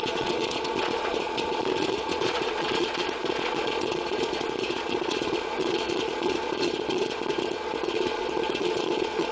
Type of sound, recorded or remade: remade